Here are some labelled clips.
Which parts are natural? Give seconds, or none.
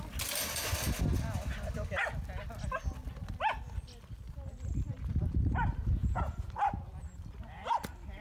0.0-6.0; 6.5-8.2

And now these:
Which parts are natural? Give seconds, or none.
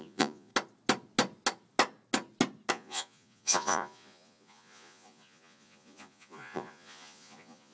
0.5-2.7